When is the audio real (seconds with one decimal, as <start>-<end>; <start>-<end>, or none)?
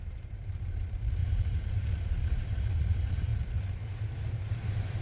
3.3-4.3